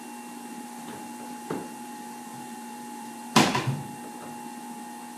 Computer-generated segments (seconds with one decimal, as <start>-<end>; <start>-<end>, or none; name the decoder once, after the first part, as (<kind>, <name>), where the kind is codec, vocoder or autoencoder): 0.5-3.6 (vocoder, BigVGAN v2)